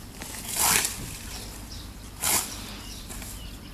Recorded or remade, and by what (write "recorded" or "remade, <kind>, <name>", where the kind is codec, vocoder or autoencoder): recorded